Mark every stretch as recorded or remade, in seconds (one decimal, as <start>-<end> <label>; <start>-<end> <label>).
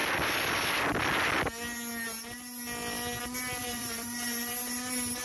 0.0-1.0 remade; 1.0-3.6 recorded; 3.6-4.5 remade; 4.5-5.2 recorded